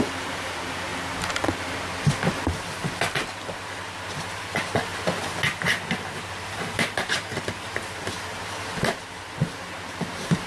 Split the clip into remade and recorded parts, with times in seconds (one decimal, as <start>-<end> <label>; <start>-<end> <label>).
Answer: 0.0-0.9 remade; 0.9-4.3 recorded; 4.3-4.9 remade; 4.9-6.3 recorded; 6.3-8.3 remade; 8.3-9.3 recorded; 9.3-10.5 remade